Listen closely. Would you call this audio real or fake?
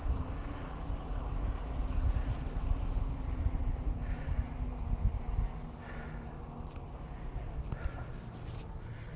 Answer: real